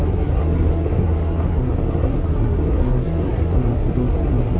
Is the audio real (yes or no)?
no